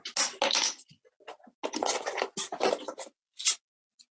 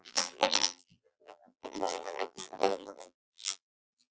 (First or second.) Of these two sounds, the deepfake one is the second